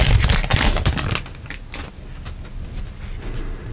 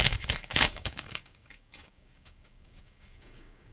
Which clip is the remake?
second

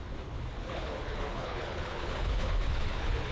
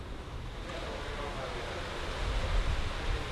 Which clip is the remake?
first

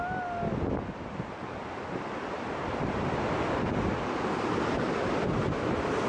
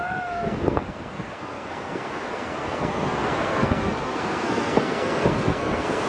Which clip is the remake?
second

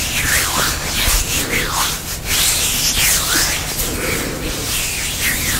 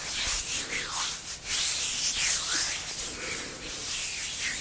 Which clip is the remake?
second